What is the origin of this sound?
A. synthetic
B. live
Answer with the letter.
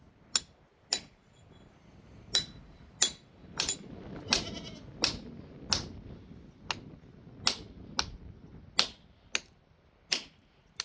B